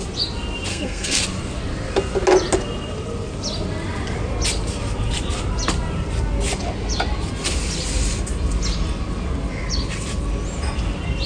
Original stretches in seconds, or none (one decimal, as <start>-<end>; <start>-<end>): 0.0-0.7; 1.2-11.3